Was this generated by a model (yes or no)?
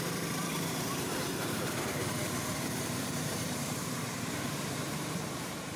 yes